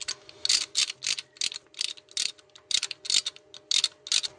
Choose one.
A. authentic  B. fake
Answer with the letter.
A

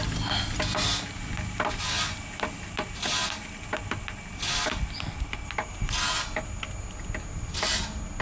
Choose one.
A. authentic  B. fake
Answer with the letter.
A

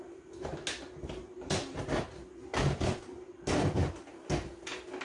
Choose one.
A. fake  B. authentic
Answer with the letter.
B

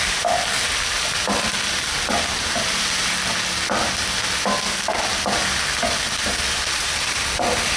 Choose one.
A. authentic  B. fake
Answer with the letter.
A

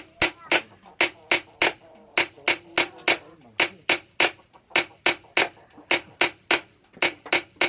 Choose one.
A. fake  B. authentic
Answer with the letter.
B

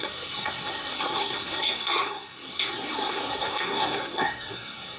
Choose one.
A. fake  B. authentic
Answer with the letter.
A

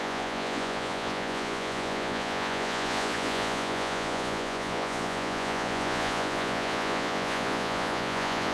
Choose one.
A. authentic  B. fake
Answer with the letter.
B